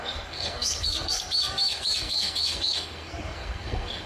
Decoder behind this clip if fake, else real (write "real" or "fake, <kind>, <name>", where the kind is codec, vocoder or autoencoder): fake, codec, SNAC